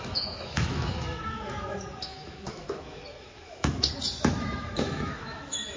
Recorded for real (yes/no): no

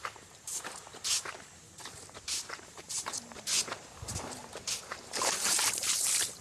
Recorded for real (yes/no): no